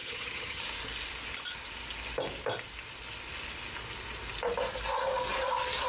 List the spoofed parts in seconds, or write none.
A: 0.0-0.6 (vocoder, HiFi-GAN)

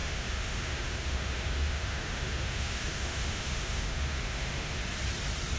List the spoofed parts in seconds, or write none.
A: 0.0-4.8 (autoencoder, DAC-VAE)

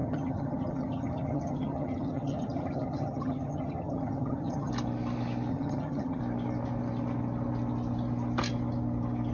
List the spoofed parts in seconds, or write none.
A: 0.0-4.7 (vocoder, HiFi-GAN); 5.5-6.2